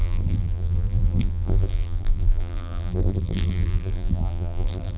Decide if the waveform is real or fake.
fake